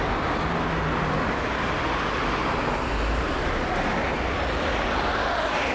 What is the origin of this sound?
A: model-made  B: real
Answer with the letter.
B